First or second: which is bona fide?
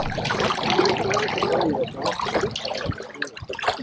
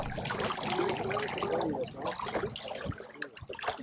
second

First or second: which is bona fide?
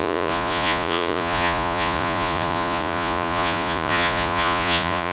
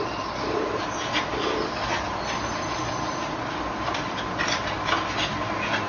second